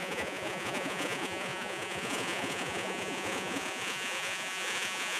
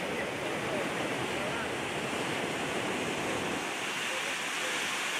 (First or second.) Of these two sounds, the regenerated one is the first